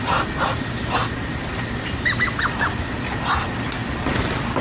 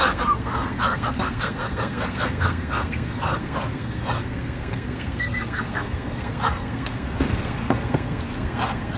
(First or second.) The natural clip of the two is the first